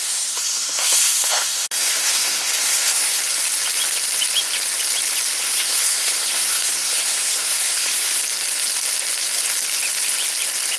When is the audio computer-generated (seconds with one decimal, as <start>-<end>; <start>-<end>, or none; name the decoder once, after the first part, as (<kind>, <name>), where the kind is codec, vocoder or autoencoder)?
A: 0.0-3.2 (codec, SNAC); 5.4-8.2